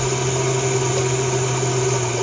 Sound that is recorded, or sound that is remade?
recorded